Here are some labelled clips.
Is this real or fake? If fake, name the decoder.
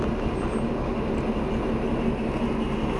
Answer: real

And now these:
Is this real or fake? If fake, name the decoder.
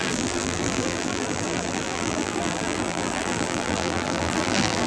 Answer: fake, vocoder, BigVGAN v2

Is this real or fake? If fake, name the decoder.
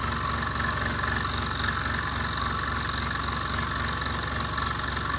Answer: real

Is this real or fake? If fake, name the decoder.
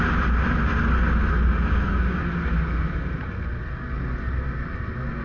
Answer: real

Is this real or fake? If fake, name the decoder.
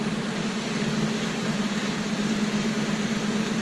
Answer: real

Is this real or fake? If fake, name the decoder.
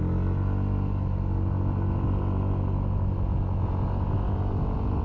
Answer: real